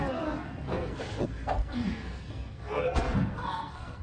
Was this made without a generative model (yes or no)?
no